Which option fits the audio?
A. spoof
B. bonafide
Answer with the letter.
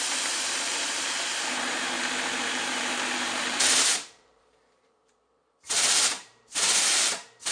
A